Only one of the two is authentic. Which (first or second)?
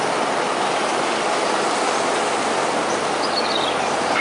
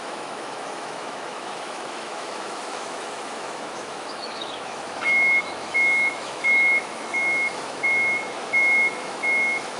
first